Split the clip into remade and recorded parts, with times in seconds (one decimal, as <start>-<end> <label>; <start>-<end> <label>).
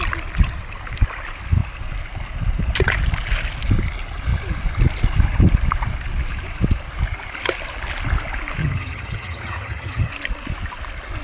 0.0-8.6 recorded; 8.6-10.1 remade; 10.1-11.2 recorded